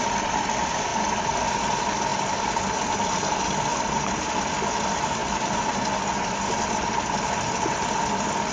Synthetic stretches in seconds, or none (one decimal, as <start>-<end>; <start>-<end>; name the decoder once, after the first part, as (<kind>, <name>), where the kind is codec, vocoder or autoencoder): 0.0-0.9 (vocoder, BigVGAN v2); 1.5-3.7; 4.8-5.2; 7.4-8.5